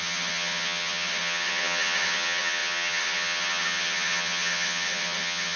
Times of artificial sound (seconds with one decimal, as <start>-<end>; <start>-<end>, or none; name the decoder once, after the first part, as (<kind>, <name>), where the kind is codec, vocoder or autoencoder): 0.0-5.6 (vocoder, HiFi-GAN)